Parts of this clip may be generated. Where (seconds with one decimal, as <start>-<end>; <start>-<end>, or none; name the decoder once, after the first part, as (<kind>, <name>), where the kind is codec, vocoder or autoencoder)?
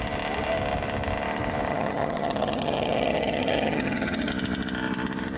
1.7-4.3 (vocoder, HiFi-GAN)